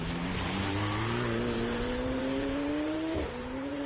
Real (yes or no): no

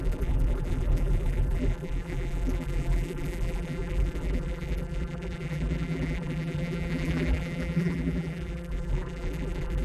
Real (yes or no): no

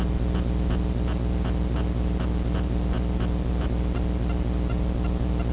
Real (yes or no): yes